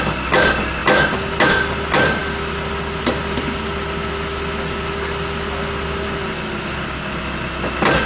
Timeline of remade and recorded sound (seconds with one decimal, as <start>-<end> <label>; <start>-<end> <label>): 0.0-8.1 recorded